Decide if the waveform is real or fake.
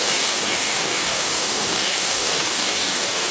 fake